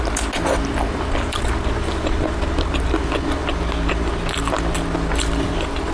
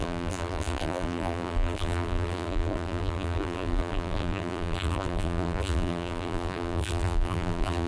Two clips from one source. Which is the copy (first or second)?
second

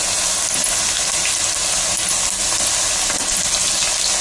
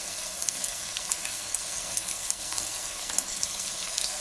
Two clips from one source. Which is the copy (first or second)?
second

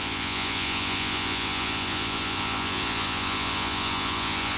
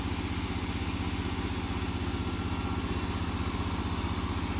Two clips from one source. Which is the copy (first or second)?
first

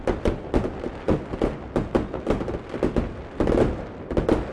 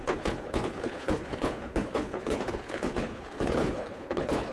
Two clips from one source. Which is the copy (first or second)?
second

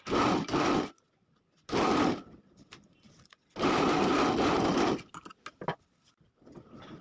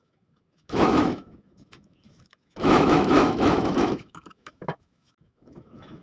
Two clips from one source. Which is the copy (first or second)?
second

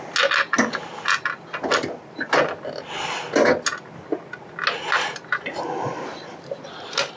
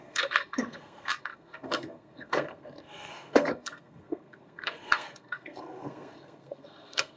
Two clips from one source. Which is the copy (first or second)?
second